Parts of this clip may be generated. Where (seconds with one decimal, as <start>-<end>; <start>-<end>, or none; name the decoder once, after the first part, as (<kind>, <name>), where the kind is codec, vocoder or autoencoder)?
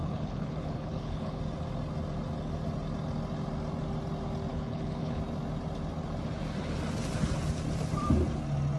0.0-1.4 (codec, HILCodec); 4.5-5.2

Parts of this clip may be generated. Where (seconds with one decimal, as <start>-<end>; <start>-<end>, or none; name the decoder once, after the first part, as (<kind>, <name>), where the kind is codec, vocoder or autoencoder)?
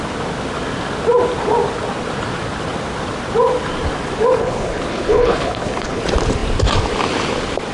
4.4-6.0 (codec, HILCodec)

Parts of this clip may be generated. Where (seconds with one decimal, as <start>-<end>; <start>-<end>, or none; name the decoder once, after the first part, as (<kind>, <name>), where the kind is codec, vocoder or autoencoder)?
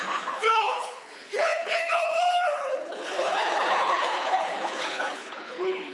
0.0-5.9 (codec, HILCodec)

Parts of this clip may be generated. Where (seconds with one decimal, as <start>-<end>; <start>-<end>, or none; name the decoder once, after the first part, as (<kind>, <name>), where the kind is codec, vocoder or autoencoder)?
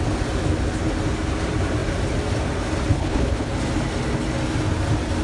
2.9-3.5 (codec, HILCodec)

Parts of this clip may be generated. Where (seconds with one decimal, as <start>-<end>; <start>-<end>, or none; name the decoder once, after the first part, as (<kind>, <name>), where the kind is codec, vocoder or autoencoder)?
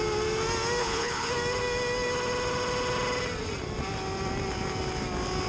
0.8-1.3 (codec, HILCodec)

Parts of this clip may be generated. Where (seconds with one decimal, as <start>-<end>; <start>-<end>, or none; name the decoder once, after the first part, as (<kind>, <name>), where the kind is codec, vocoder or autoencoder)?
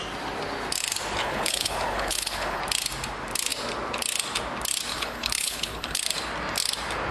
1.2-2.6 (codec, HILCodec); 4.9-6.0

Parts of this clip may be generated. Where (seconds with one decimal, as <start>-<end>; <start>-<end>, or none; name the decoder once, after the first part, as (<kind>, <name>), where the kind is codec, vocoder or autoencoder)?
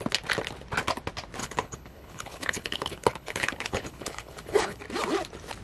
1.4-4.8 (codec, HILCodec)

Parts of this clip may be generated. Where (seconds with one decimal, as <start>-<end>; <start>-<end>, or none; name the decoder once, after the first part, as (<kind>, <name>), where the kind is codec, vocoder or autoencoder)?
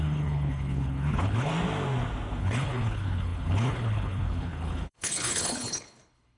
0.0-1.5 (codec, HILCodec); 2.4-6.4